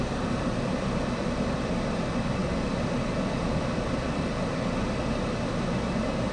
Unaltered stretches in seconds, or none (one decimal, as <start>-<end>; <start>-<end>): none